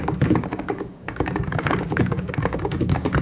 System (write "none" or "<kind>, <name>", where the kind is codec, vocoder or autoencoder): codec, DAC